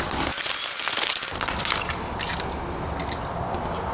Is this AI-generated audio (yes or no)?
no